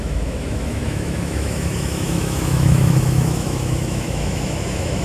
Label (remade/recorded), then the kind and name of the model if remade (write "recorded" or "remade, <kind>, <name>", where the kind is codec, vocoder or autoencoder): remade, autoencoder, DAC-VAE